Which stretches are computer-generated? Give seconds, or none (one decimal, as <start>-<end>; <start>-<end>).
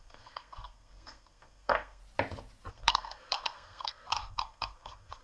0.0-2.0; 2.7-5.2